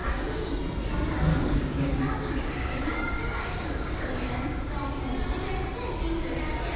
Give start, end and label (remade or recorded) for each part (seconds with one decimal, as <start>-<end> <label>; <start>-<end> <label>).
0.0-0.5 remade; 0.5-1.3 recorded; 1.3-4.7 remade; 4.7-6.8 recorded